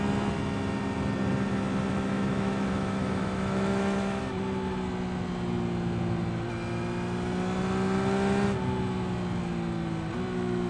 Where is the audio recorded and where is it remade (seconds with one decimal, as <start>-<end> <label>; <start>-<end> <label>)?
0.0-1.9 recorded; 1.9-4.2 remade; 4.2-10.7 recorded

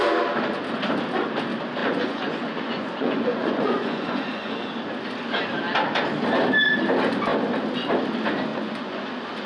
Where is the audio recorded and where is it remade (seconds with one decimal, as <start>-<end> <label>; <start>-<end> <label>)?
0.0-1.8 recorded; 1.8-4.7 remade; 4.7-8.5 recorded; 8.5-9.0 remade; 9.0-9.5 recorded